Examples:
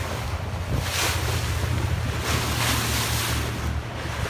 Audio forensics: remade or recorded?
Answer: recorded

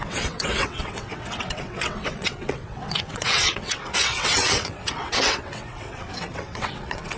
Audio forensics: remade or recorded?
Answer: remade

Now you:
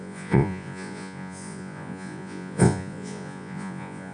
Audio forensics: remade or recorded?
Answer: remade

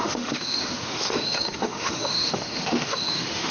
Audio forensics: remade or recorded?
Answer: remade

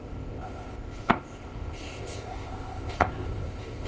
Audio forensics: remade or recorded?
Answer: remade